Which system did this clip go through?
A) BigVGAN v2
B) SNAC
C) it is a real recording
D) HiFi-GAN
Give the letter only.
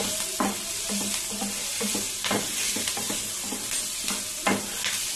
C